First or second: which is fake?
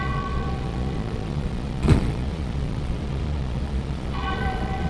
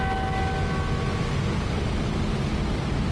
first